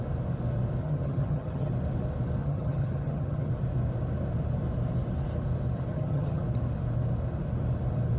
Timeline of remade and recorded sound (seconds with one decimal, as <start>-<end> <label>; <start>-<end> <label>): 0.0-0.8 recorded; 0.8-1.7 remade; 1.7-2.4 recorded; 2.4-3.5 remade; 3.5-5.9 recorded; 5.9-6.4 remade; 6.4-8.2 recorded